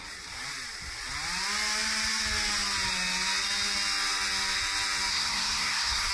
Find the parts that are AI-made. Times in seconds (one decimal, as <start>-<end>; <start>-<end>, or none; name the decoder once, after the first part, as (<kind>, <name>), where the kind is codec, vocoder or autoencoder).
5.1-6.1 (codec, SNAC)